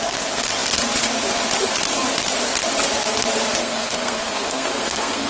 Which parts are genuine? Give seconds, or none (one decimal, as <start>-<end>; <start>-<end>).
0.0-3.6